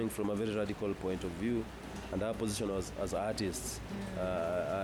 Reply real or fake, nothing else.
real